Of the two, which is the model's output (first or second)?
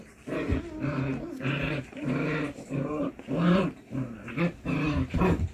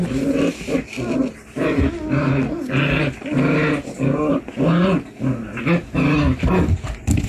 first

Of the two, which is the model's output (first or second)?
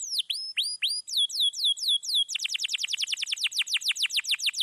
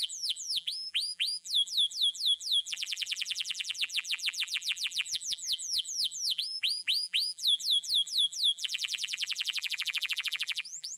second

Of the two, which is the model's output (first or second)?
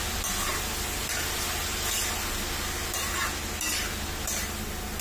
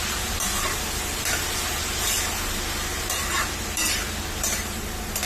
second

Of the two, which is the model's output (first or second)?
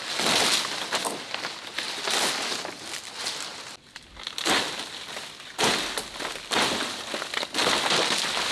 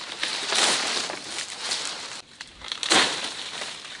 second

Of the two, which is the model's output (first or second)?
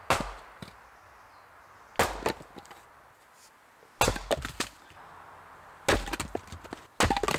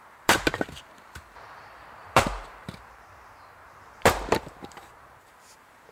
second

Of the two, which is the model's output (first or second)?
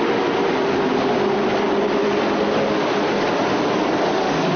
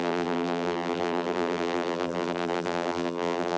second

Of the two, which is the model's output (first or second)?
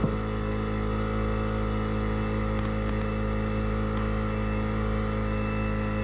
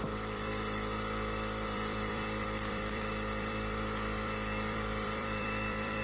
second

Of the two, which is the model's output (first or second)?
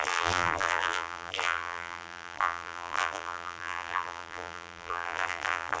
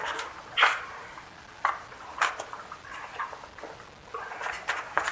first